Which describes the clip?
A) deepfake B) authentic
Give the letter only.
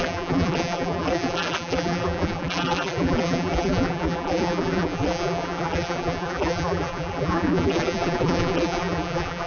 A